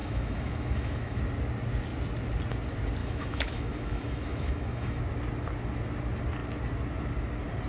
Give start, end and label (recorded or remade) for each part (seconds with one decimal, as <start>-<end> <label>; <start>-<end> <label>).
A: 0.0-1.2 remade; 1.2-3.0 recorded; 3.0-5.0 remade; 5.0-7.7 recorded